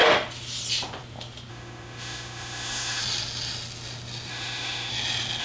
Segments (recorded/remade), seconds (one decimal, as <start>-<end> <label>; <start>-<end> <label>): 0.0-1.5 recorded; 1.5-3.0 remade; 3.0-4.3 recorded; 4.3-4.9 remade; 4.9-5.4 recorded